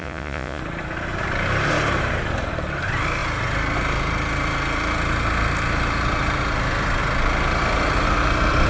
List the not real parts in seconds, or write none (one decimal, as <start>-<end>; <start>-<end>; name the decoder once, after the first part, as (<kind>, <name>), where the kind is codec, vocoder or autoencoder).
0.0-0.6 (vocoder, Vocos)